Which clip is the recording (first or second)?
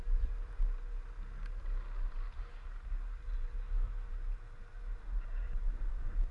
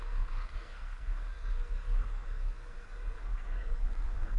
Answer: first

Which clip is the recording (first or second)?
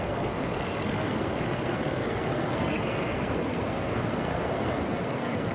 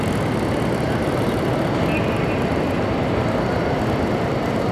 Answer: second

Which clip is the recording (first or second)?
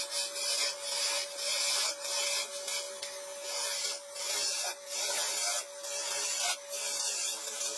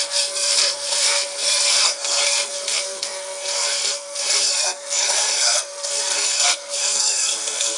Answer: first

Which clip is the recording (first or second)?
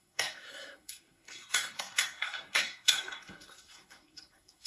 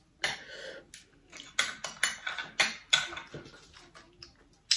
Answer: second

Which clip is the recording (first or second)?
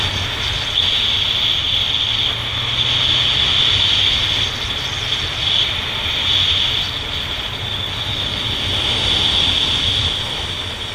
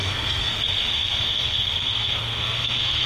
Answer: first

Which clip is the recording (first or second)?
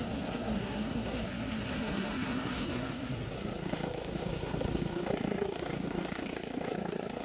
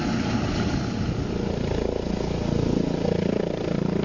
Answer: second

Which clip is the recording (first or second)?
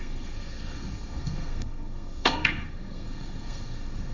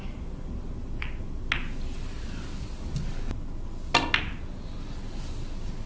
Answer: second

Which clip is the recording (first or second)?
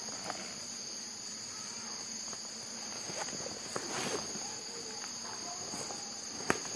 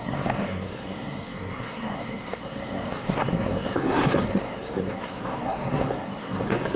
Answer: first